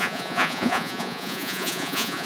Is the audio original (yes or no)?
no